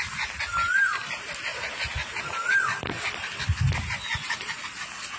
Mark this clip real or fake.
real